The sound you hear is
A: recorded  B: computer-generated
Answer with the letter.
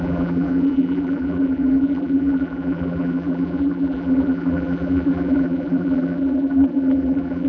B